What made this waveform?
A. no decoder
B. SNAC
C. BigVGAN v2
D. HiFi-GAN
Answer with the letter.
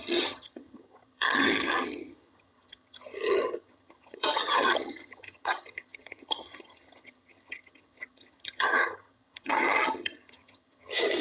D